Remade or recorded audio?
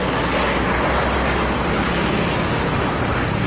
recorded